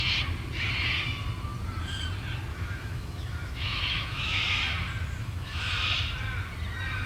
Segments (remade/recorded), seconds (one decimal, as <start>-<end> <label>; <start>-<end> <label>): 0.0-2.5 recorded; 2.5-4.4 remade; 4.4-5.2 recorded; 5.2-5.7 remade; 5.7-7.1 recorded